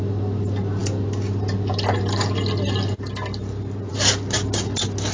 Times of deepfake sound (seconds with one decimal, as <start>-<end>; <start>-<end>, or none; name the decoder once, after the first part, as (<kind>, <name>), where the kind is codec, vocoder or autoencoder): none